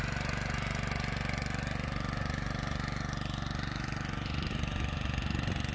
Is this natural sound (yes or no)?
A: yes